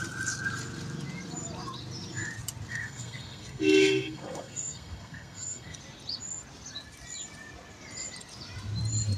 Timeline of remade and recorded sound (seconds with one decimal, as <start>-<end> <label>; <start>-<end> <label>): 0.0-2.7 recorded; 2.7-5.8 remade; 5.8-9.2 recorded